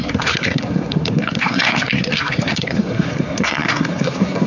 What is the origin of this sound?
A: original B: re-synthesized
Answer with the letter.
B